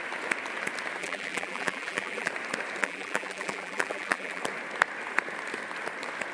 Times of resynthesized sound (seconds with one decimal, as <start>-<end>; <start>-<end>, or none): 1.0-2.3; 2.8-4.4